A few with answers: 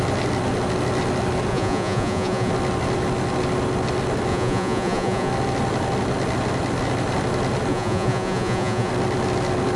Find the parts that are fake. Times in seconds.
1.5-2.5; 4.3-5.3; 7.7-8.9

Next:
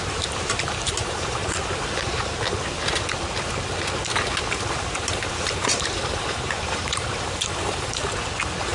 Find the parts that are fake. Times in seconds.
0.0-1.4; 4.7-8.0

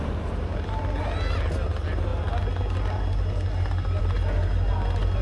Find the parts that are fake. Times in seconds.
none